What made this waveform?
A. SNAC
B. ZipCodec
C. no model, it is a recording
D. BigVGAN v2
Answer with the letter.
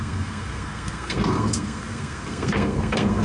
A